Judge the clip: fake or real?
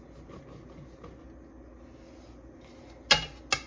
real